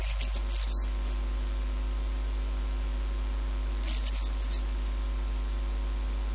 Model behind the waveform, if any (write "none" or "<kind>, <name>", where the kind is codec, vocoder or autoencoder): none